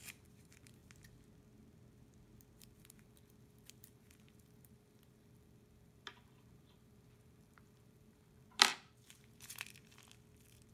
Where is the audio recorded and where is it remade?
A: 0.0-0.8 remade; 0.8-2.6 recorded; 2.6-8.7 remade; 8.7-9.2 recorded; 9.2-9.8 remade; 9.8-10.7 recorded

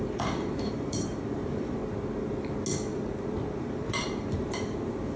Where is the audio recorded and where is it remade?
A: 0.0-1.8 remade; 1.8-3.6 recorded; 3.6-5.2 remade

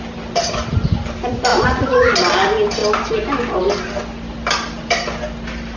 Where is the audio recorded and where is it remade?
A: 0.0-1.5 recorded; 1.5-2.1 remade; 2.1-5.8 recorded

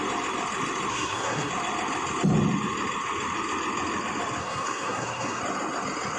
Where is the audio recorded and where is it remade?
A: 0.0-0.9 recorded; 0.9-1.5 remade; 1.5-4.4 recorded; 4.4-5.4 remade; 5.4-6.2 recorded

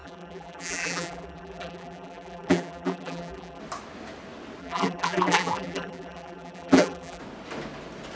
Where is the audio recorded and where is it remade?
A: 0.0-3.6 remade; 3.6-4.6 recorded; 4.6-7.2 remade; 7.2-8.2 recorded

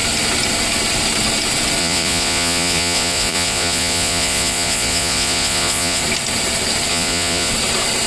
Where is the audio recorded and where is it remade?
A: 0.0-1.8 recorded; 1.8-6.0 remade; 6.0-6.9 recorded; 6.9-7.5 remade; 7.5-8.1 recorded

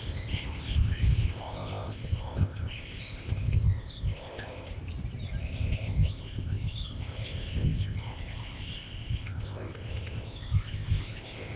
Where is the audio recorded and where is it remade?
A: 0.0-4.7 remade; 4.7-5.4 recorded; 5.4-11.6 remade